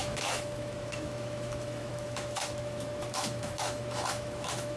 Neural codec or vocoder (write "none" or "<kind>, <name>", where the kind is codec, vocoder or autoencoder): autoencoder, DAC-VAE